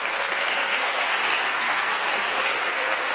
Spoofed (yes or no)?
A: yes